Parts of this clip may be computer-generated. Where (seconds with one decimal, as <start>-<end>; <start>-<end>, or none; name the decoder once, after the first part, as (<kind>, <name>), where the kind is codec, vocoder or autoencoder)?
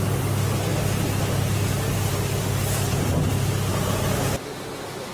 none